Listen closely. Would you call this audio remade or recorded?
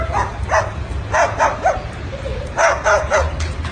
recorded